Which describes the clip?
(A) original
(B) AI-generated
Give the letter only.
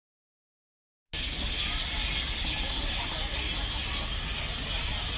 A